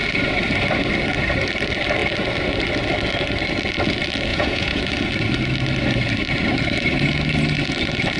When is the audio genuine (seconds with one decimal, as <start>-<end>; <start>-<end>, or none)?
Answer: 0.0-4.3; 4.8-8.2